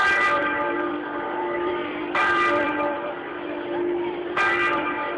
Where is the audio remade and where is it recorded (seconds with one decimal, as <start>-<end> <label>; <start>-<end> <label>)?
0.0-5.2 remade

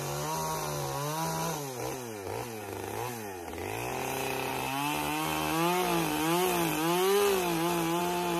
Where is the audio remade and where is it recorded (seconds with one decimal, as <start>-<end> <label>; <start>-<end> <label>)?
0.0-8.4 recorded

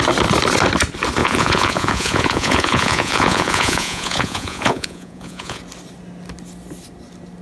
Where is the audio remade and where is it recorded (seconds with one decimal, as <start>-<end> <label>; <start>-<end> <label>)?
0.0-1.2 recorded; 1.2-5.6 remade; 5.6-7.4 recorded

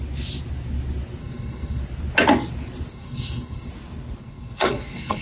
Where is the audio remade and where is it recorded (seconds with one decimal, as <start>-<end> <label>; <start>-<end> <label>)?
0.0-1.2 recorded; 1.2-1.8 remade; 1.8-2.9 recorded; 2.9-3.7 remade; 3.7-4.2 recorded; 4.2-5.2 remade

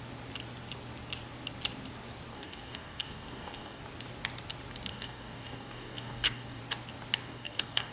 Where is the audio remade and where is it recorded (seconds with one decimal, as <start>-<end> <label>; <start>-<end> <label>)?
0.0-2.3 recorded; 2.3-3.8 remade; 3.8-4.9 recorded; 4.9-6.6 remade; 6.6-7.2 recorded; 7.2-7.9 remade

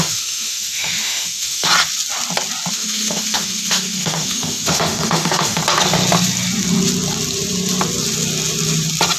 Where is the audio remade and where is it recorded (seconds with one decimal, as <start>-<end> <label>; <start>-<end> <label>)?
0.0-1.7 remade; 1.7-2.7 recorded; 2.7-5.6 remade; 5.6-9.2 recorded